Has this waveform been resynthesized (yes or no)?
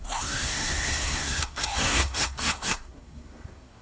yes